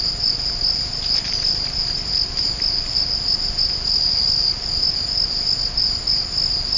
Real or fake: real